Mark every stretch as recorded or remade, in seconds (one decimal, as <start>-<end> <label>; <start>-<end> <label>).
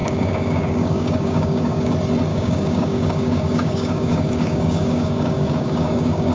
0.0-1.9 remade; 1.9-2.3 recorded; 2.3-6.3 remade